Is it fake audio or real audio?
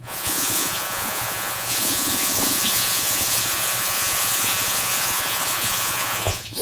fake